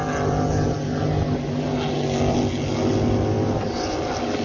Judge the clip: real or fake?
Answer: real